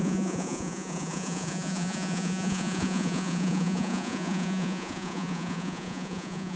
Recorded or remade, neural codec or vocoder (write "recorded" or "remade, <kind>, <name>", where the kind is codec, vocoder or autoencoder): remade, vocoder, Vocos